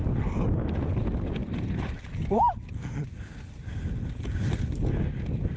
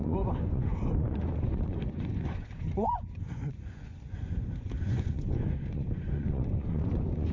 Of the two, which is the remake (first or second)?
second